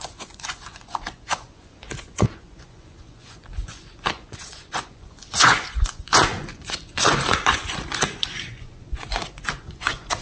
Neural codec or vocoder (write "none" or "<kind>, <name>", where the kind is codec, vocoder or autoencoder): vocoder, Vocos